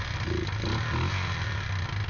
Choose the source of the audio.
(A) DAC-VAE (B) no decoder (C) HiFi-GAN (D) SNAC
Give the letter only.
B